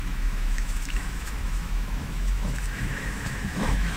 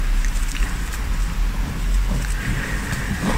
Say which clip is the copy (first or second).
first